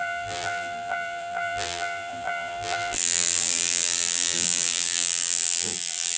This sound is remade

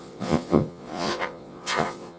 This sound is remade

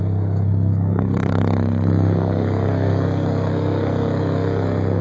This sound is remade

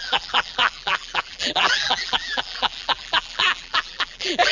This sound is remade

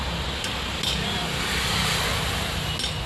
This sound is recorded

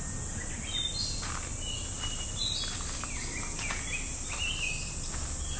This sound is recorded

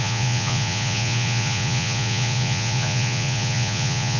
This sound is remade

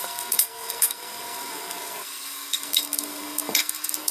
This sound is remade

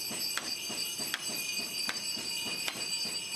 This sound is recorded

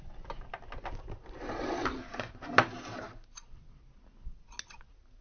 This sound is recorded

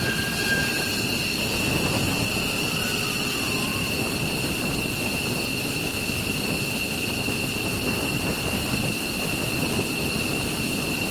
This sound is recorded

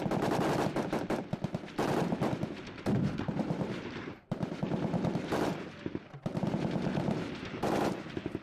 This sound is remade